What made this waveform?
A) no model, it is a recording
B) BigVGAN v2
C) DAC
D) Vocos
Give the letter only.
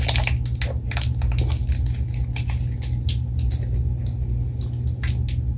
A